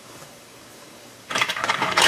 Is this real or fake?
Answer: fake